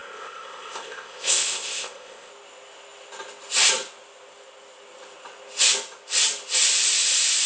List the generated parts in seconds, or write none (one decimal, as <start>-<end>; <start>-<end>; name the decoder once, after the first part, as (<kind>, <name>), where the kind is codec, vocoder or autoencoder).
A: 0.0-2.3 (codec, ZipCodec)